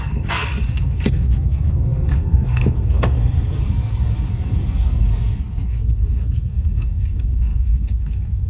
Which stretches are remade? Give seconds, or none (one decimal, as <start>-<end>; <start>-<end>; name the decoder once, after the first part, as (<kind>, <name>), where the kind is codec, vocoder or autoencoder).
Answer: 0.0-8.5 (codec, SNAC)